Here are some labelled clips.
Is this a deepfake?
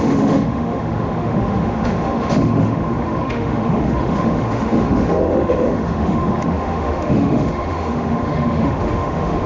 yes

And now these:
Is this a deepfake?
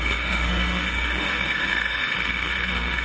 yes